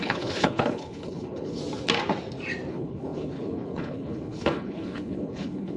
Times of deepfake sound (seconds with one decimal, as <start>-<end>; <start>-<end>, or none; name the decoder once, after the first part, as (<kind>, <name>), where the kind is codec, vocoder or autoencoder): 0.0-1.6 (codec, HILCodec); 2.7-5.8